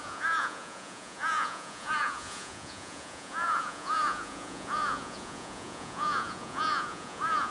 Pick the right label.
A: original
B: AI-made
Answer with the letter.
B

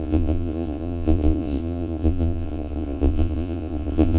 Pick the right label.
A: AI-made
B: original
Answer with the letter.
A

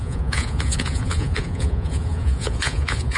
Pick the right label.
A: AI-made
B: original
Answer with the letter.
A